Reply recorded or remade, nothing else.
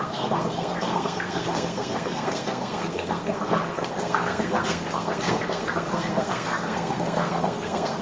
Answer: remade